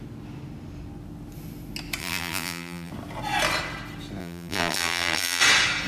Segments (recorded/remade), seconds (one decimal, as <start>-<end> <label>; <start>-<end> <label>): 0.0-2.0 recorded; 2.0-2.9 remade; 2.9-4.2 recorded; 4.2-5.4 remade; 5.4-5.9 recorded